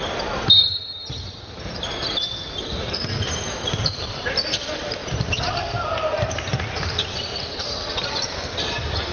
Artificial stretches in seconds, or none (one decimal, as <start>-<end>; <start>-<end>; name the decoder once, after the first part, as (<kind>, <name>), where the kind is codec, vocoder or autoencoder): 0.0-9.1 (vocoder, BigVGAN v2)